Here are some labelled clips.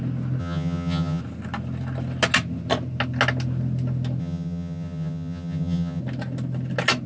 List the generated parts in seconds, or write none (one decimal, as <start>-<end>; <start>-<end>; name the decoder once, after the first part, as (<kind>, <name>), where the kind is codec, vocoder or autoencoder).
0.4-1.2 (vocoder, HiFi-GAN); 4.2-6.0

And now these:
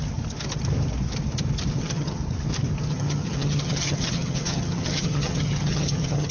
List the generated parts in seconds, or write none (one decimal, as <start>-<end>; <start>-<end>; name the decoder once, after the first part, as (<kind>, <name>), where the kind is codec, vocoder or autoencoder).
1.8-2.2 (vocoder, HiFi-GAN); 2.9-6.3

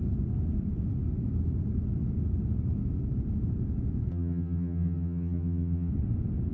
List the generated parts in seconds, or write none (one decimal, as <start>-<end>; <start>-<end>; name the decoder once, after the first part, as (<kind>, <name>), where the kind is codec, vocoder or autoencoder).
4.1-5.9 (vocoder, HiFi-GAN)

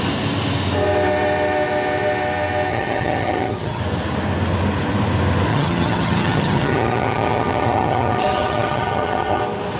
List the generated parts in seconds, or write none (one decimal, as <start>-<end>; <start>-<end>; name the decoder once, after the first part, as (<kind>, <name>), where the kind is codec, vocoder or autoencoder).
2.7-3.8 (vocoder, HiFi-GAN); 5.5-9.4

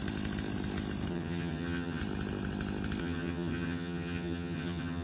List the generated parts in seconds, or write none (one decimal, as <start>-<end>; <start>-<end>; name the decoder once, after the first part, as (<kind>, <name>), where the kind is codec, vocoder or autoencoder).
1.1-2.0 (vocoder, HiFi-GAN); 3.0-5.0

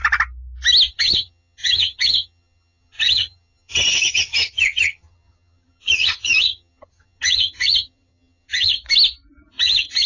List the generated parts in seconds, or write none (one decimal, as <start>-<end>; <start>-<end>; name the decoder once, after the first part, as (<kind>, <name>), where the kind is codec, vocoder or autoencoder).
0.9-8.8 (vocoder, HiFi-GAN); 9.5-10.1

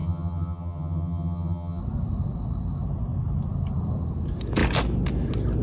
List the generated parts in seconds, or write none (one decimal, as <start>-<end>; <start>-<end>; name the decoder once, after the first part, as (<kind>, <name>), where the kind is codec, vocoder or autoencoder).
0.0-1.8 (vocoder, HiFi-GAN)

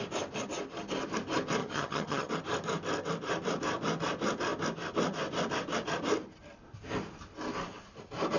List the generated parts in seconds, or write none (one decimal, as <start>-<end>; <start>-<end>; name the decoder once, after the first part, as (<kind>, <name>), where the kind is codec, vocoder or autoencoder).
1.6-2.3 (vocoder, HiFi-GAN)